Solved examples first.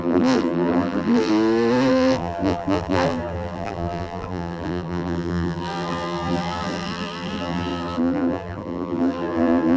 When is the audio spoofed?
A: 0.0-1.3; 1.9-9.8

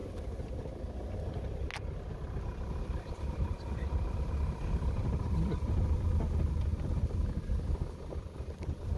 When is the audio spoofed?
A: 0.0-0.9; 2.2-6.1

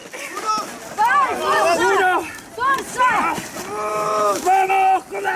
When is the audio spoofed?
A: 3.9-4.7